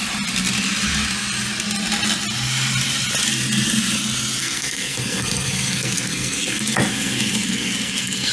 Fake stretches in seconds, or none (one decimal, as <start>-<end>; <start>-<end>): 4.4-8.3